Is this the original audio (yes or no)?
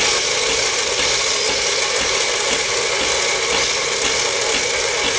yes